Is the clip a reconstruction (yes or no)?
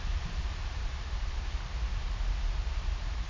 yes